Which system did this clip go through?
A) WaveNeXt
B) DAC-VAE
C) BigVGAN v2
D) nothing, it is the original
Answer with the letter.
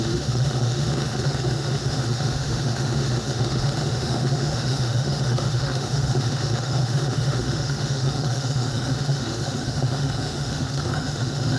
B